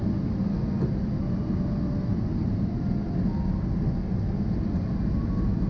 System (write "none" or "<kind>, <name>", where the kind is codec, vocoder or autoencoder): none